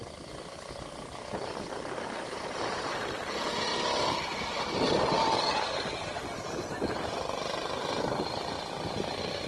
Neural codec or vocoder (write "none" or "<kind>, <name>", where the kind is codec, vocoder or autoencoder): none